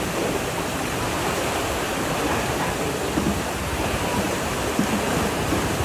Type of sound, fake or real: fake